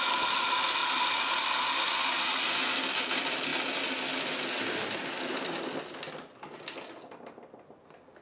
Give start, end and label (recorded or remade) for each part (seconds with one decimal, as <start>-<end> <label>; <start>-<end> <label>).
0.0-8.2 recorded